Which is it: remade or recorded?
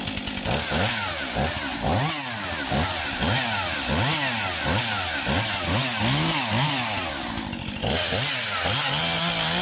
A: recorded